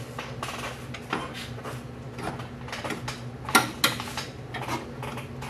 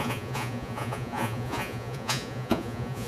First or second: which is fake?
second